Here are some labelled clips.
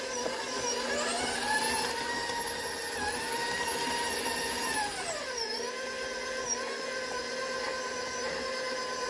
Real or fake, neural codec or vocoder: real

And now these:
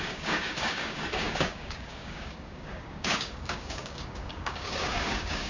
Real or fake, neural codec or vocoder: fake, codec, DAC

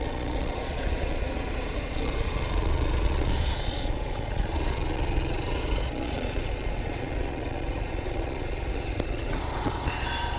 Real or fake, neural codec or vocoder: fake, vocoder, Vocos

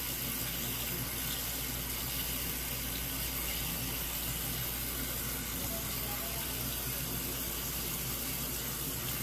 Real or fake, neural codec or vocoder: real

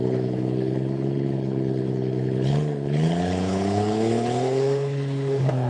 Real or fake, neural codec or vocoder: fake, codec, HILCodec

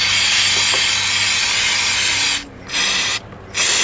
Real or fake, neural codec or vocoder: real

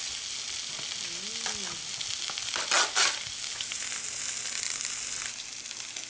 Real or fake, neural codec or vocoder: real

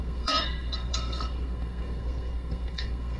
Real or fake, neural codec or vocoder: fake, codec, SNAC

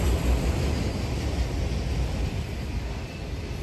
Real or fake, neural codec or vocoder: real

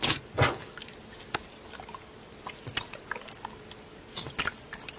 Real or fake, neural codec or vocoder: real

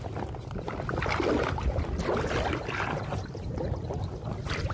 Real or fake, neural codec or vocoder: real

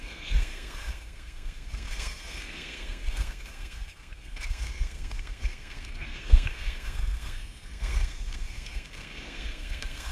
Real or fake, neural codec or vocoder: fake, codec, SNAC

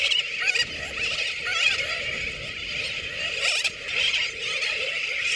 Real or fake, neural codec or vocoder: real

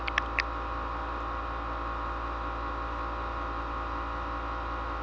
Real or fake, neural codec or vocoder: real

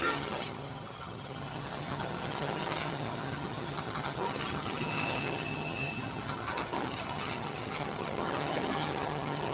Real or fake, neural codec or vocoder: fake, vocoder, HiFi-GAN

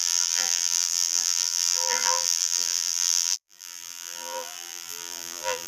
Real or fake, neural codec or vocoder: fake, vocoder, BigVGAN v2